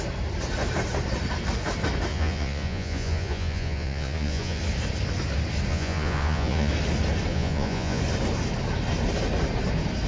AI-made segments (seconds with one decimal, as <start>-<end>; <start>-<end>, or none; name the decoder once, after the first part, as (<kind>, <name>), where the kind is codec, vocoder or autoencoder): 2.1-4.6 (vocoder, Vocos); 5.7-6.7; 7.3-8.0